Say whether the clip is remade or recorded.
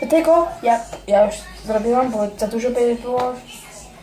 recorded